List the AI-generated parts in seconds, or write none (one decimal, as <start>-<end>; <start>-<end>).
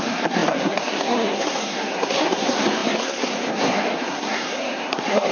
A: 0.0-5.3